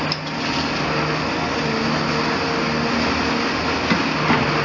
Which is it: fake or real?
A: real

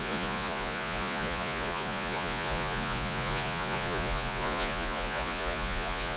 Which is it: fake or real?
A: fake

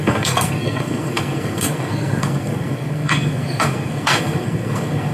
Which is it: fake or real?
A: fake